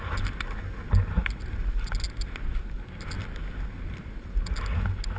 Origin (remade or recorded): recorded